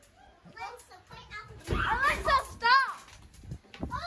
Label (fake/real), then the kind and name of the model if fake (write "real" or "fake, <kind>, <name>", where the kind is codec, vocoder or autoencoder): real